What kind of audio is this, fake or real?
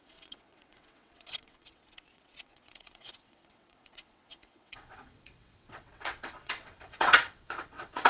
fake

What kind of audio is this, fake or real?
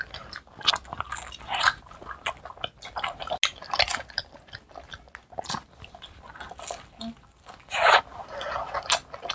real